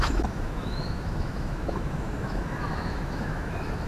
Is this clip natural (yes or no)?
no